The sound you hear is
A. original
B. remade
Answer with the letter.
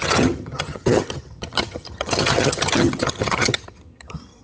B